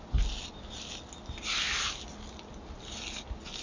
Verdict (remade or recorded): recorded